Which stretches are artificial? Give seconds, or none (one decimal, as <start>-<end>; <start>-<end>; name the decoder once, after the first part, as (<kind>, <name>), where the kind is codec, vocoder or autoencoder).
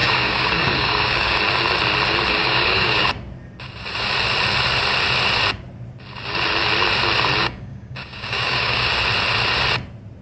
0.0-1.4 (codec, DAC); 2.4-3.1; 7.4-8.9